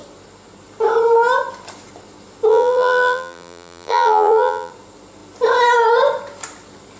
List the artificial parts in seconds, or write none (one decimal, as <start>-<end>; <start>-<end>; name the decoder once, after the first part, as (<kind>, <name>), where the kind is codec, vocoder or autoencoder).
2.5-4.7 (vocoder, BigVGAN v2)